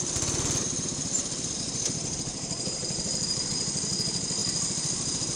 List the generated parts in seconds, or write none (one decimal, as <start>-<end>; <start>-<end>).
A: 2.3-3.5